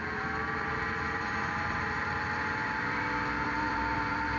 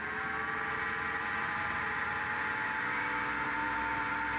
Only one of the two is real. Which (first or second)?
second